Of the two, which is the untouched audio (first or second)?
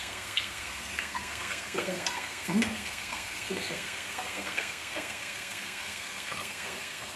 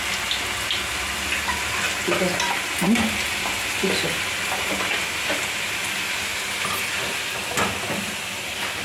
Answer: second